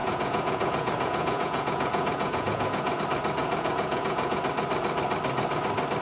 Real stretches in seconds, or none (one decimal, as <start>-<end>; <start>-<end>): 3.0-3.4; 4.4-6.0

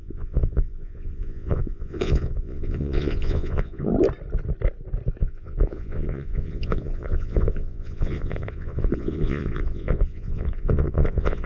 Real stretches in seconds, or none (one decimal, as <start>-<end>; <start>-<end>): 3.9-5.2